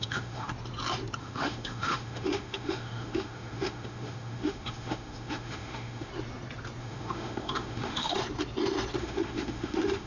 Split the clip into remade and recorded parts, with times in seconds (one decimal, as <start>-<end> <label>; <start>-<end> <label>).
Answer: 0.0-0.5 remade; 0.5-1.2 recorded; 1.2-6.1 remade; 6.1-6.8 recorded; 6.8-8.2 remade; 8.2-9.0 recorded; 9.0-10.1 remade